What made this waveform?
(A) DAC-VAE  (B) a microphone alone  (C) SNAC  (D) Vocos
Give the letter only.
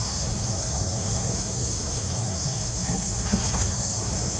C